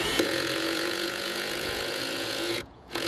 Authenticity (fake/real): fake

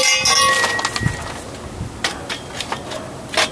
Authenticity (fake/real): real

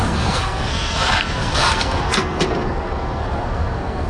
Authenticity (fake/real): fake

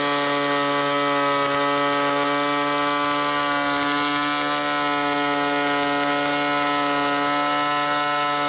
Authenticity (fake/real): real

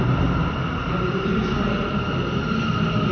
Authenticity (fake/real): real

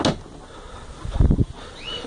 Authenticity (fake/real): real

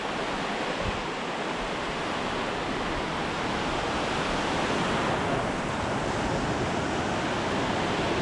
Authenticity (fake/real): real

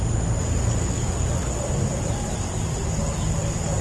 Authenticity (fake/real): real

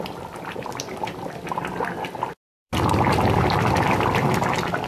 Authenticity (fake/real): fake